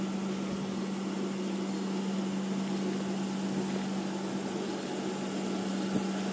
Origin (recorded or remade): recorded